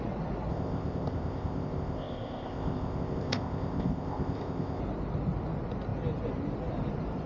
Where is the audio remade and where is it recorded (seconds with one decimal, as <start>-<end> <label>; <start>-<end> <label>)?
0.0-0.5 recorded; 0.5-4.8 remade; 4.8-7.3 recorded